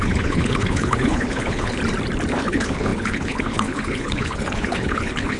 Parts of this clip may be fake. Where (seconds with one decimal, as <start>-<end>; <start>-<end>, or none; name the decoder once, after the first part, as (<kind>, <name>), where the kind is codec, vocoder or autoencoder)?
0.0-1.8 (codec, HILCodec); 2.3-5.4